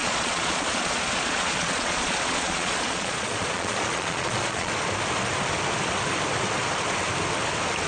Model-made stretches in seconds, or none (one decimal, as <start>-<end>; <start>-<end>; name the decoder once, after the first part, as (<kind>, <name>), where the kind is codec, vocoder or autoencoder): 0.0-4.7 (vocoder, Vocos)